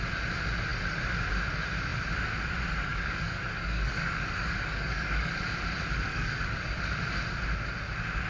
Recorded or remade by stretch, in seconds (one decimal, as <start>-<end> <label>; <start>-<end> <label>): 0.0-2.9 recorded; 2.9-5.3 remade; 5.3-6.1 recorded; 6.1-6.8 remade; 6.8-8.3 recorded